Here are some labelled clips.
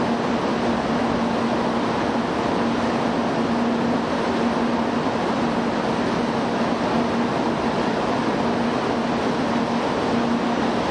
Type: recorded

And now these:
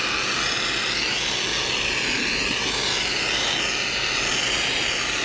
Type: recorded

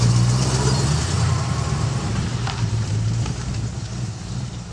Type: remade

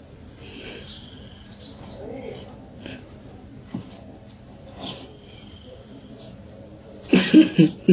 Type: remade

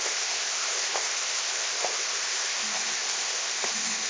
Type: remade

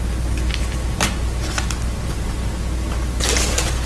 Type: recorded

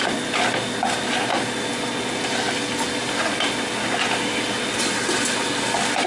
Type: recorded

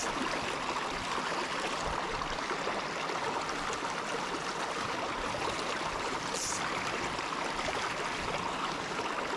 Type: recorded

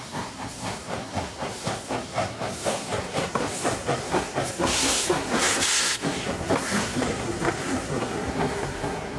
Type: remade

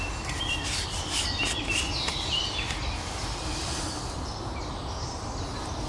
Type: recorded